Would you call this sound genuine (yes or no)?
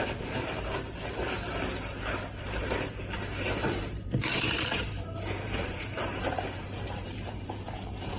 no